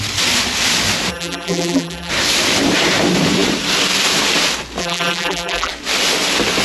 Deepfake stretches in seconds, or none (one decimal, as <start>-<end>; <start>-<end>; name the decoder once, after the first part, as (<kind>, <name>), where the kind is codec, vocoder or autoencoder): 1.1-2.1 (vocoder, BigVGAN v2); 4.8-5.7